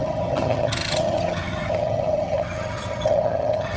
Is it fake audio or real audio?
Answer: fake